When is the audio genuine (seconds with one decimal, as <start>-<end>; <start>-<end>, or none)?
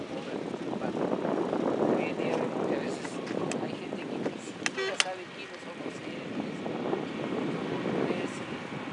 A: 0.0-8.9